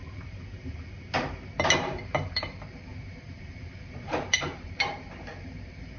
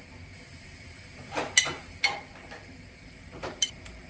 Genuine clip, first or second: second